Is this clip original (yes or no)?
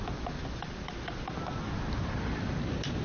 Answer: yes